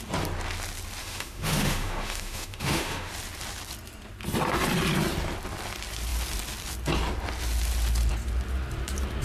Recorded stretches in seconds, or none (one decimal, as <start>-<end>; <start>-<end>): 0.0-1.0; 3.1-9.2